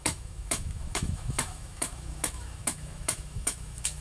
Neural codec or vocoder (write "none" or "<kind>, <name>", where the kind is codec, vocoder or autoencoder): autoencoder, DAC-VAE